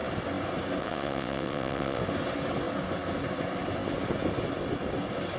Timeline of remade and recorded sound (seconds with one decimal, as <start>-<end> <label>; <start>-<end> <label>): 0.0-0.8 recorded; 0.8-2.0 remade; 2.0-5.4 recorded